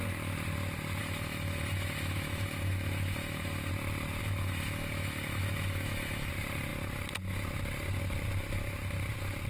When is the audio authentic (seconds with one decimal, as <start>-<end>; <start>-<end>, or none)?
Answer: 0.0-1.0; 3.7-4.2; 6.3-9.5